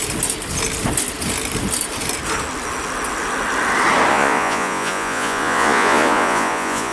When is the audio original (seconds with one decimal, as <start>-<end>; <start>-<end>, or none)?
0.0-4.1